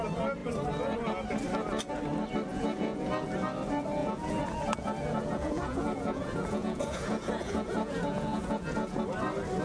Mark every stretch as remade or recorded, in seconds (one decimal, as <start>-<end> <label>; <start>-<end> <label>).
0.0-2.5 recorded; 2.5-3.1 remade; 3.1-4.0 recorded; 4.0-9.0 remade; 9.0-9.6 recorded